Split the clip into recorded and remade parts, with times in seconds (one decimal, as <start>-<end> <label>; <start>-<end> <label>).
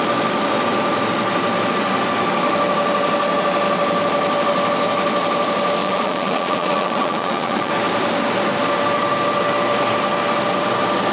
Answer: 0.0-5.8 recorded; 5.8-7.7 remade; 7.7-11.1 recorded